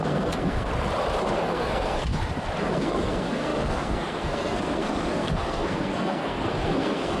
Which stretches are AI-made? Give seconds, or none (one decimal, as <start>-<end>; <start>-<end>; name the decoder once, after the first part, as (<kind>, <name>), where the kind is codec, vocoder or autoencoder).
0.0-0.7 (codec, SNAC); 1.3-2.1; 2.6-7.2

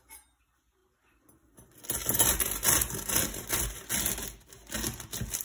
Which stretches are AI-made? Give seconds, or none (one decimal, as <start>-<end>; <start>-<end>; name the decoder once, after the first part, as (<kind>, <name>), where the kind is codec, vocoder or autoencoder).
none

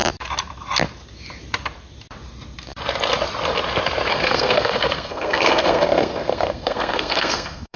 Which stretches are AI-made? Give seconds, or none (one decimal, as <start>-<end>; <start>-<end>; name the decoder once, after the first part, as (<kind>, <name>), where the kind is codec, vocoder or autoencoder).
4.1-7.8 (codec, SNAC)

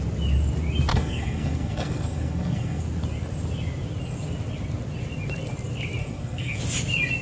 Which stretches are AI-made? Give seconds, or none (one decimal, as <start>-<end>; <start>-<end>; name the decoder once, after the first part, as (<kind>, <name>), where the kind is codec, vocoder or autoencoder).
0.9-2.8 (codec, SNAC); 6.0-6.6

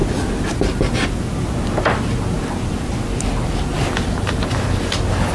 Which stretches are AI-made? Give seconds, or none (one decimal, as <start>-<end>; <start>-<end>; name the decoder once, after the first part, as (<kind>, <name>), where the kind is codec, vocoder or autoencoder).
none

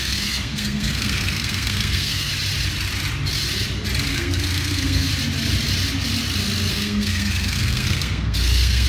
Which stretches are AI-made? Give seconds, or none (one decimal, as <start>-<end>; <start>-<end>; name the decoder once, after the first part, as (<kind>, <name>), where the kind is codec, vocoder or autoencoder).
0.0-2.3 (codec, SNAC); 4.1-5.1; 6.7-8.9

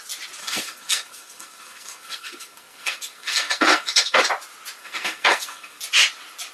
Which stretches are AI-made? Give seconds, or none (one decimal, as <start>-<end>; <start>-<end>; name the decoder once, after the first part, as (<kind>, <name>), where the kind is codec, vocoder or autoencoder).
0.4-4.2 (codec, SNAC); 4.8-5.8

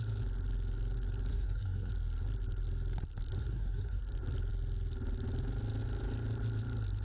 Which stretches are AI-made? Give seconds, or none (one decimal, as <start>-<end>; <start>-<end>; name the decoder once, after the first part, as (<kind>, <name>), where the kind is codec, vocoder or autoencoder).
1.3-1.9 (codec, SNAC); 3.4-4.0